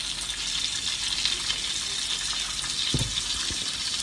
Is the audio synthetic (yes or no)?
no